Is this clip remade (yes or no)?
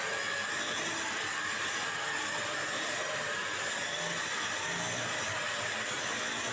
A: no